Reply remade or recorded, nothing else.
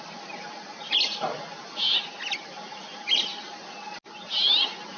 recorded